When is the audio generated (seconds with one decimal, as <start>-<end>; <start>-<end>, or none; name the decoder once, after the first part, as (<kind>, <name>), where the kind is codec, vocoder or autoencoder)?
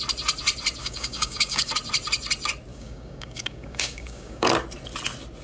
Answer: 0.8-1.7 (codec, DAC); 2.7-4.5